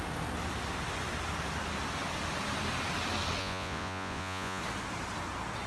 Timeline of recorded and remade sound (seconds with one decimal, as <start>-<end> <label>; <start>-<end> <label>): 0.0-3.4 recorded; 3.4-4.6 remade; 4.6-5.7 recorded